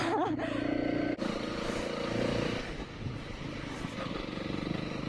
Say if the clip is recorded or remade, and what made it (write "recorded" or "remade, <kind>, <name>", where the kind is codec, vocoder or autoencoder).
recorded